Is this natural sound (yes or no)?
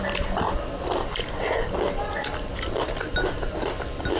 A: yes